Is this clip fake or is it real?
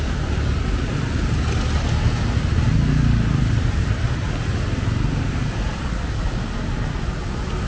real